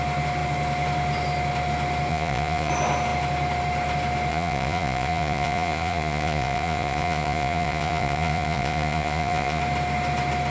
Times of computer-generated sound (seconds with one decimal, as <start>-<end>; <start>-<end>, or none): 2.1-2.7; 4.3-9.6